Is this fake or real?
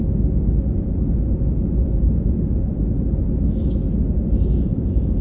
real